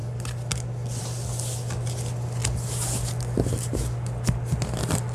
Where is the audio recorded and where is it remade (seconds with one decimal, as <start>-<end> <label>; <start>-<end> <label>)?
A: 0.0-5.1 recorded